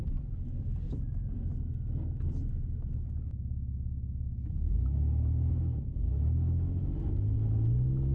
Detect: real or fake real